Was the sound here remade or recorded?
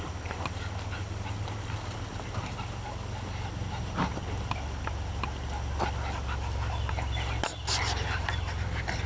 recorded